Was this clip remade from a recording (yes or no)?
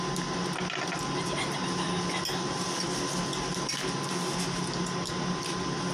no